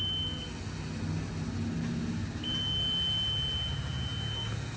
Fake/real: real